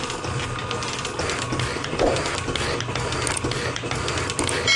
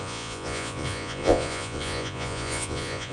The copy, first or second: second